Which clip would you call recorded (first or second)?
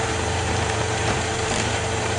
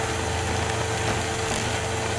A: second